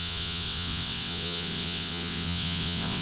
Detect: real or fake fake